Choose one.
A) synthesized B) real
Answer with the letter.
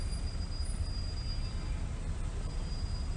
B